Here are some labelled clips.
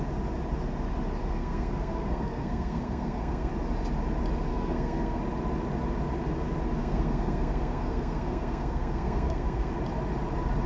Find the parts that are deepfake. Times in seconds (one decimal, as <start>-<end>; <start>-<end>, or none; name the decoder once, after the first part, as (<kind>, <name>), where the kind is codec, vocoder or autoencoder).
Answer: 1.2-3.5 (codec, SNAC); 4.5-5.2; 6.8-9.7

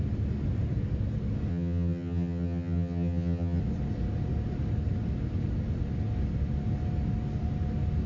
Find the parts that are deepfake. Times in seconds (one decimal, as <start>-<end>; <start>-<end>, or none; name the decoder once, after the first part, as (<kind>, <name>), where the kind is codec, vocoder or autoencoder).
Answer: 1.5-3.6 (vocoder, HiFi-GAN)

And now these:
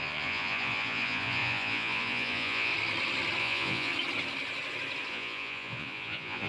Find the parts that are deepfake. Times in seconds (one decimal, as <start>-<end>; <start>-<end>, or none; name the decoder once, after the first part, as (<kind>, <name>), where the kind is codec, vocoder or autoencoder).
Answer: 0.0-2.7 (vocoder, Vocos); 3.4-3.9; 5.1-6.5

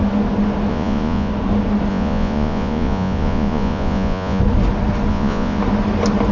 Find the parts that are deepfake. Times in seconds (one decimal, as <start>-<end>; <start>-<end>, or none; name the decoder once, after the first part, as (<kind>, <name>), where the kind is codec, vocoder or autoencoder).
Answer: 0.7-1.3 (vocoder, Vocos); 1.9-4.4; 5.1-5.6

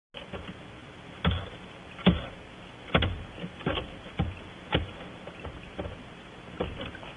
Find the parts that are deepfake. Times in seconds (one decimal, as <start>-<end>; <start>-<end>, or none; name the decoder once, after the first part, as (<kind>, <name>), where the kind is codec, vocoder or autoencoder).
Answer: none

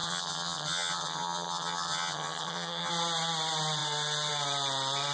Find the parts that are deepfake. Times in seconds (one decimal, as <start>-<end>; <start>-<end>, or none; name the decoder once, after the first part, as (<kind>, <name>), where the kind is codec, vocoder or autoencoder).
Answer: 0.0-2.9 (vocoder, HiFi-GAN)

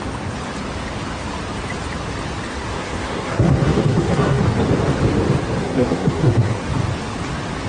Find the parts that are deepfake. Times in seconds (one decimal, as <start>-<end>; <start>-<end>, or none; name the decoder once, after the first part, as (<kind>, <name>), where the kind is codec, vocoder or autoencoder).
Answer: 2.5-4.4 (codec, SNAC); 5.6-6.7

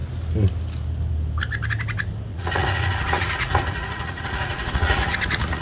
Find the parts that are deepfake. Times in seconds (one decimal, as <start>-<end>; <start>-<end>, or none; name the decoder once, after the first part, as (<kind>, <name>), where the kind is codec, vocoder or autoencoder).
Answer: 2.3-5.6 (vocoder, Vocos)